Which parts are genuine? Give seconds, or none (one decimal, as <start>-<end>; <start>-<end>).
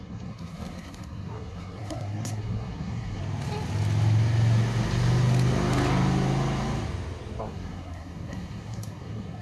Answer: 3.2-7.4